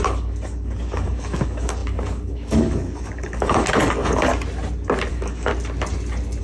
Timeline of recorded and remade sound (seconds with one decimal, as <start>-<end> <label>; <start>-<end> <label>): 0.0-4.3 remade; 4.3-5.1 recorded; 5.1-5.5 remade; 5.5-6.4 recorded